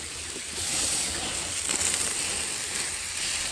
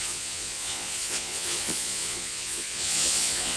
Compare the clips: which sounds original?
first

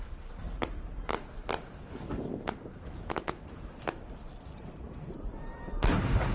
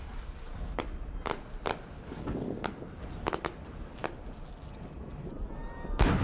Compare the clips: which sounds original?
second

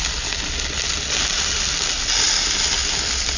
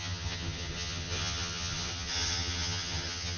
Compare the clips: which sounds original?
first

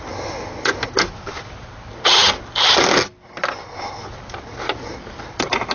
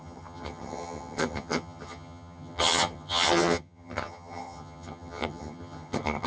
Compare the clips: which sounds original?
first